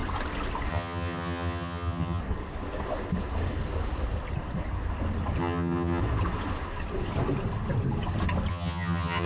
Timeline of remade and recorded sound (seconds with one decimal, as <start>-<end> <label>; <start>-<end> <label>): 0.0-0.7 recorded; 0.7-2.2 remade; 2.2-5.4 recorded; 5.4-6.0 remade; 6.0-8.5 recorded; 8.5-9.3 remade